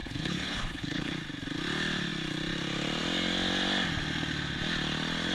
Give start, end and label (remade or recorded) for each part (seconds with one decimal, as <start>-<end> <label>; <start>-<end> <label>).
0.0-1.1 remade; 1.1-5.3 recorded